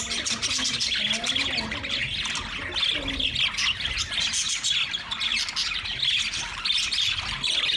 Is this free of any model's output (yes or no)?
yes